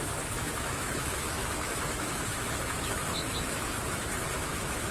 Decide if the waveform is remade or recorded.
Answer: remade